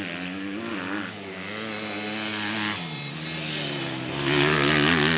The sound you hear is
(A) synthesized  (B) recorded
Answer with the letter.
B